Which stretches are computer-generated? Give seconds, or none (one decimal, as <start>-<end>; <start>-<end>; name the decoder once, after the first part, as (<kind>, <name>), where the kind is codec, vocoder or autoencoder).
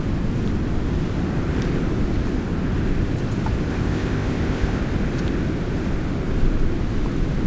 3.7-4.8 (codec, ZipCodec)